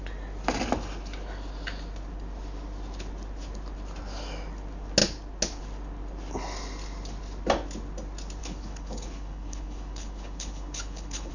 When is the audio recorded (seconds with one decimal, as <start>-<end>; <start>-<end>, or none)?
0.0-8.4